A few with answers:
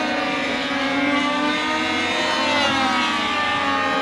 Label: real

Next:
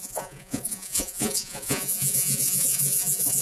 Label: fake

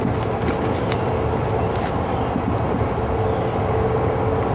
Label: real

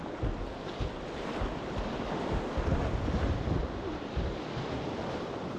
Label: real